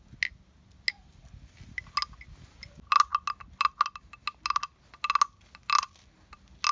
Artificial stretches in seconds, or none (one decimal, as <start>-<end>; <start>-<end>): none